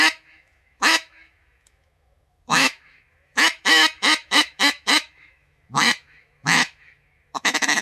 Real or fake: fake